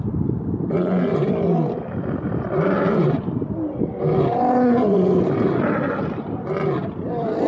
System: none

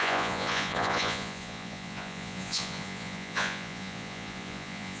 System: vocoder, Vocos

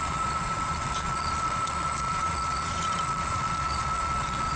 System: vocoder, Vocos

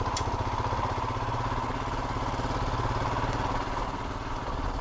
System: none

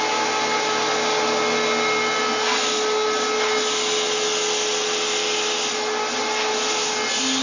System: none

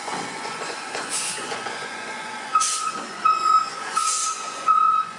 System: vocoder, Vocos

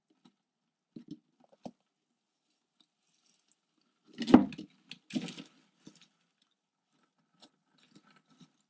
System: none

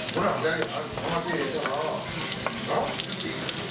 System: none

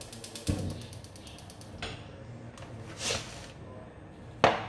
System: none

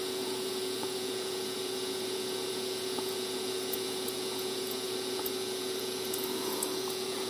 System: vocoder, Vocos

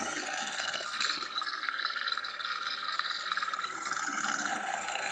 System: codec, SNAC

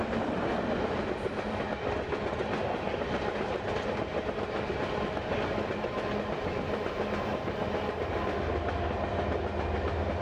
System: none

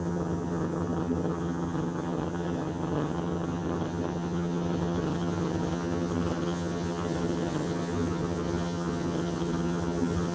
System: vocoder, HiFi-GAN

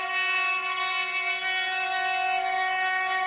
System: none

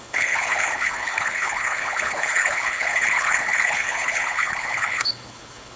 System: codec, HILCodec